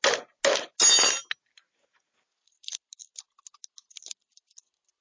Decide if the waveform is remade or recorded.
recorded